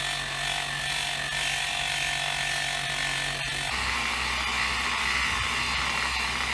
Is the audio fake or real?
real